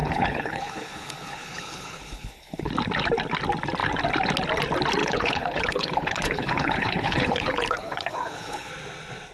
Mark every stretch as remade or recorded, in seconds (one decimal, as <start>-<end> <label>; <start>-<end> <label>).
0.0-2.7 remade; 2.7-5.0 recorded; 5.0-8.7 remade; 8.7-9.3 recorded